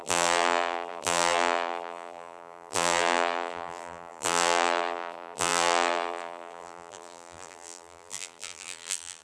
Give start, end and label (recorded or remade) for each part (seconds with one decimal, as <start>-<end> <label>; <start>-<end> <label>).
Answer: 0.0-9.2 remade